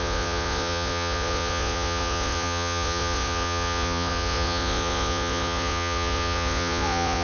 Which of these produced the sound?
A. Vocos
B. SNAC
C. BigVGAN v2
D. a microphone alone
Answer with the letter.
A